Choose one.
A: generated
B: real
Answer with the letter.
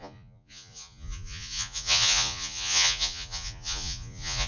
A